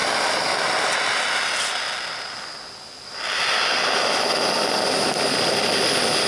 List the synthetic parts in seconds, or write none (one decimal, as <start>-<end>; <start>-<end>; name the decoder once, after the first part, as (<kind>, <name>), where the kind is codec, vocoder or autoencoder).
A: none